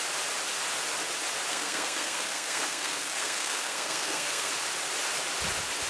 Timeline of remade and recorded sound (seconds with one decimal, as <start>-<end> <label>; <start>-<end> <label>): 0.0-1.5 recorded; 1.5-4.5 remade; 4.5-5.9 recorded